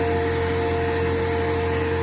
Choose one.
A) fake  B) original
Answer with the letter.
B